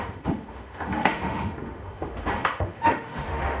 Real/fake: fake